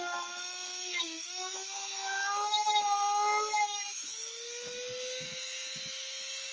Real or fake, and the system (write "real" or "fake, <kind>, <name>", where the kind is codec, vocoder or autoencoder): fake, autoencoder, DAC-VAE